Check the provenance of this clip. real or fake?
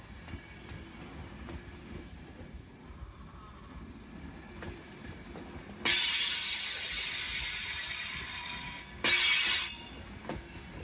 real